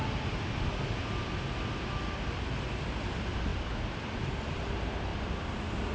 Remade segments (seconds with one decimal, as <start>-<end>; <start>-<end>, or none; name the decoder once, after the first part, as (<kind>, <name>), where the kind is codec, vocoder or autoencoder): 3.5-4.4 (vocoder, BigVGAN v2); 5.1-5.9